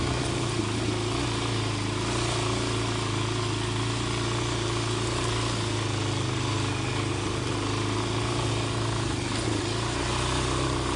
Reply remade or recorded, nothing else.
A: recorded